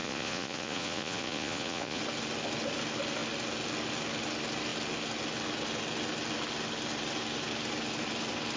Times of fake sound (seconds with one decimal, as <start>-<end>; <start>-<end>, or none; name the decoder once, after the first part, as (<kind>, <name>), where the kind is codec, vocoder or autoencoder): 0.0-2.0 (vocoder, Vocos)